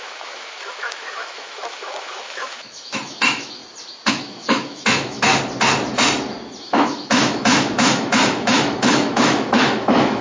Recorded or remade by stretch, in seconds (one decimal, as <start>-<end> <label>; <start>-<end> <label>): 0.0-3.6 remade; 3.6-4.1 recorded; 4.1-5.3 remade; 5.3-6.6 recorded; 6.6-10.2 remade

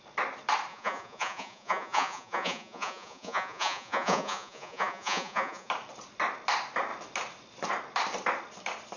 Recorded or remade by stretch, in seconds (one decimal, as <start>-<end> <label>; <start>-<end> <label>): 0.0-0.7 recorded; 0.7-5.7 remade; 5.7-9.0 recorded

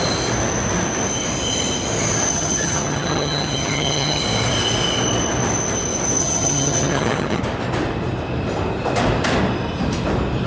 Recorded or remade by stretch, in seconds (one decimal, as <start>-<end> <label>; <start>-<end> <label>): 0.0-2.3 recorded; 2.3-4.2 remade; 4.2-6.2 recorded; 6.2-7.4 remade; 7.4-10.5 recorded

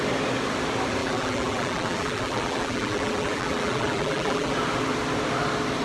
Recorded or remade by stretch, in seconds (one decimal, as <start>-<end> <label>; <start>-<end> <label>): 0.0-1.0 recorded; 1.0-4.5 remade; 4.5-5.8 recorded